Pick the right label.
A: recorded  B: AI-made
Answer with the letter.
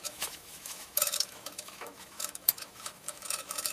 B